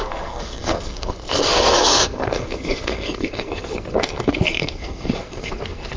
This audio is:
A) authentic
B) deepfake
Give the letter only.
B